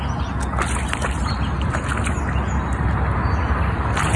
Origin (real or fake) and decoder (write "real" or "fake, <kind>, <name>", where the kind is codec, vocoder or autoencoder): real